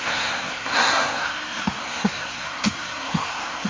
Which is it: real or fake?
fake